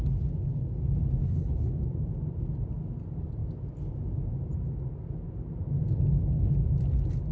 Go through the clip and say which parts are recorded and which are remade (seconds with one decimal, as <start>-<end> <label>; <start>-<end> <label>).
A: 0.0-1.2 recorded; 1.2-1.7 remade; 1.7-7.3 recorded